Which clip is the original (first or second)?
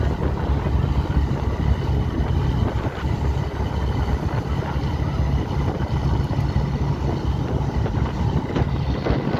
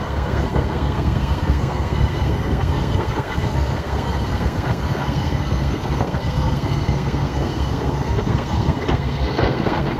first